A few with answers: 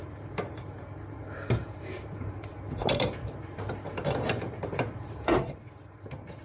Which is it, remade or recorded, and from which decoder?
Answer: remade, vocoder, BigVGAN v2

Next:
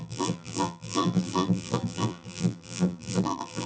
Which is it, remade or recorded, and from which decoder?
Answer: remade, vocoder, BigVGAN v2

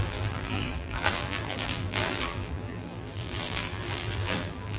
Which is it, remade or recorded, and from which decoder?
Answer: remade, vocoder, BigVGAN v2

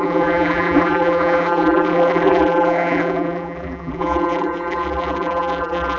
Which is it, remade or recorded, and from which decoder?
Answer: remade, vocoder, BigVGAN v2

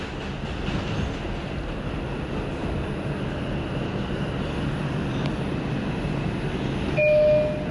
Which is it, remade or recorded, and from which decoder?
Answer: recorded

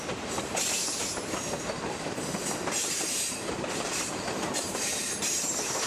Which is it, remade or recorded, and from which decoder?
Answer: remade, vocoder, BigVGAN v2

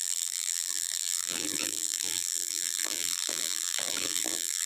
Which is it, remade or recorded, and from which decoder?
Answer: remade, vocoder, BigVGAN v2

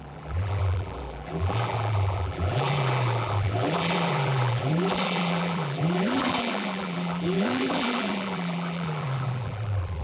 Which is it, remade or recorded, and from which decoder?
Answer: remade, vocoder, BigVGAN v2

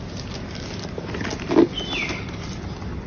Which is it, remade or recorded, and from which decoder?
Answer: recorded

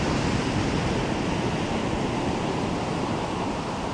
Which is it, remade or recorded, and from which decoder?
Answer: recorded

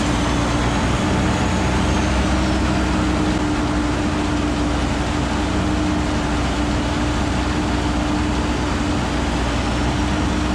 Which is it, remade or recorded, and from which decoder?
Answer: recorded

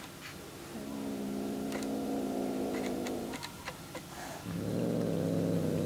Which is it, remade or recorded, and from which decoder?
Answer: recorded